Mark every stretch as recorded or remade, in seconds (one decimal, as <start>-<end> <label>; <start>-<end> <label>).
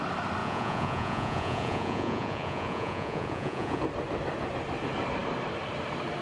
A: 0.0-0.4 recorded; 0.4-3.8 remade; 3.8-6.2 recorded